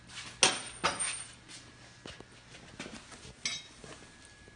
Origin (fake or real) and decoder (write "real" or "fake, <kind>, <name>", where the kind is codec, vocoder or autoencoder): real